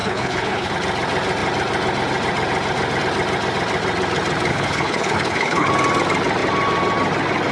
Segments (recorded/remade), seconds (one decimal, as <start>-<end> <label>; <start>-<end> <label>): 0.0-0.7 remade; 0.7-4.5 recorded; 4.5-5.7 remade; 5.7-7.5 recorded